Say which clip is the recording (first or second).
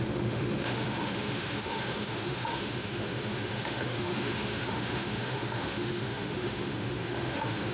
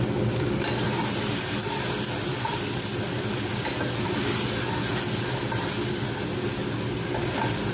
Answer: second